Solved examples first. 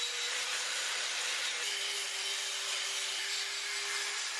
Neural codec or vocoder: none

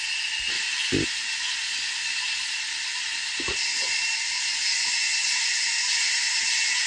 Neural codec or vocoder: none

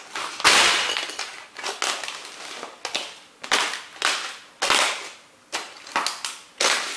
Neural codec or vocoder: none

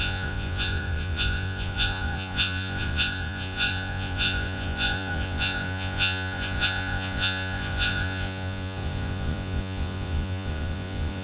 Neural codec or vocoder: vocoder, Vocos